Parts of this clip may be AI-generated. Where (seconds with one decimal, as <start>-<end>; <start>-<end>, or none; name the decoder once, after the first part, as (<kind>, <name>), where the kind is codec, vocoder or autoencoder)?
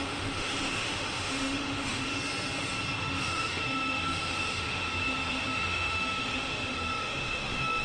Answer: 0.0-2.1 (autoencoder, DAC-VAE); 3.0-7.8